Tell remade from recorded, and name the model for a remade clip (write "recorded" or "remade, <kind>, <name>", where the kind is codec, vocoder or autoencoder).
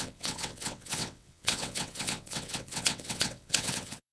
remade, vocoder, WaveNeXt